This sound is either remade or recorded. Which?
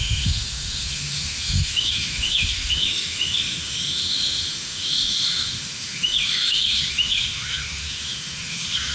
remade